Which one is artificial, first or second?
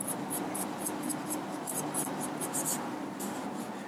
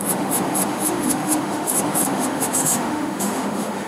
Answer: second